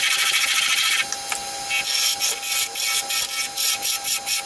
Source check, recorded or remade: recorded